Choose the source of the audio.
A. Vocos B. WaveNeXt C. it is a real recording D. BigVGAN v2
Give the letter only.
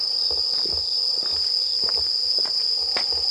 C